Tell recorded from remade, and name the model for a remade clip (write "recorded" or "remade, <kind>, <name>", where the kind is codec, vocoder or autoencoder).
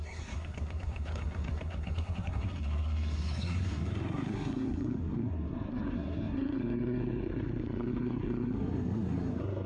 remade, codec, SNAC